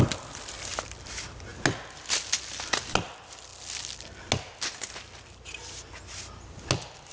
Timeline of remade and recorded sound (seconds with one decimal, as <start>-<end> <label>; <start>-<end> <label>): 0.0-7.1 recorded